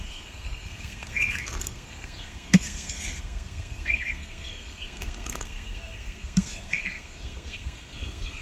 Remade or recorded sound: remade